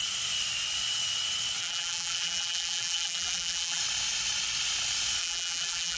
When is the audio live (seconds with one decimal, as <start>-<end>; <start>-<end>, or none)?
0.0-1.6; 3.8-5.2